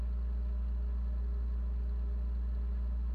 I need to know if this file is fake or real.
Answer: real